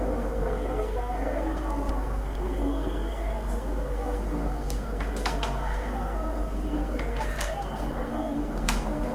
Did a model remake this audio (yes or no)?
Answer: yes